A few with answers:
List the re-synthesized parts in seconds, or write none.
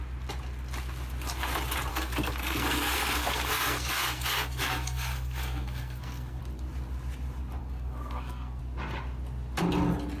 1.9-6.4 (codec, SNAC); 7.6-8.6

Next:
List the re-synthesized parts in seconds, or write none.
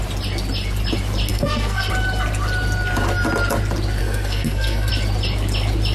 1.3-1.9 (codec, SNAC); 4.0-4.9